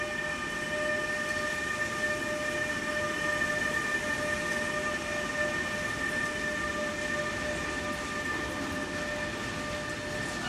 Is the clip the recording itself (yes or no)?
yes